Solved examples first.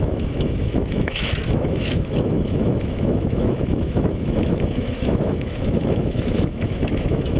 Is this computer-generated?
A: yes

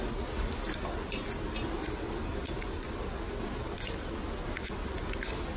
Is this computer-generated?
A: no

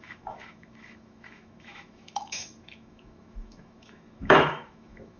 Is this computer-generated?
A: yes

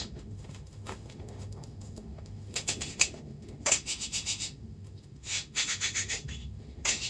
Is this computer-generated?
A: yes